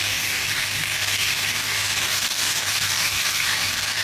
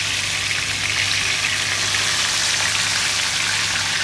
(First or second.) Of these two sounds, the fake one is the first